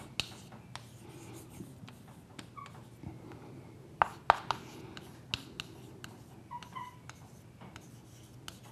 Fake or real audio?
real